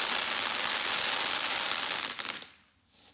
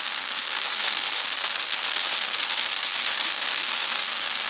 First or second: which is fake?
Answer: second